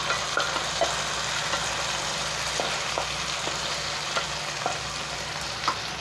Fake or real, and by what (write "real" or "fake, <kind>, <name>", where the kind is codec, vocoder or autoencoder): real